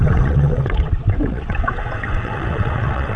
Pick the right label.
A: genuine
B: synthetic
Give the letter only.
B